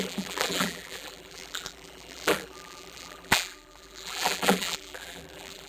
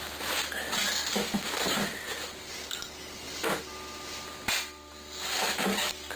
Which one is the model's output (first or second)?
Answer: first